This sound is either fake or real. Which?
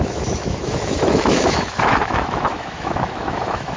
fake